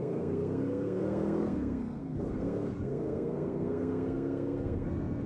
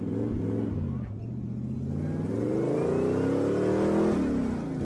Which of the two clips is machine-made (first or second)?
first